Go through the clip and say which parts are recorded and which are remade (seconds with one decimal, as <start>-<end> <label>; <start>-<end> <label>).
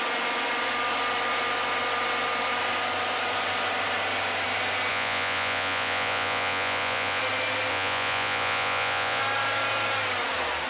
0.0-4.9 recorded; 4.9-7.2 remade; 7.2-7.7 recorded; 7.7-9.2 remade; 9.2-10.7 recorded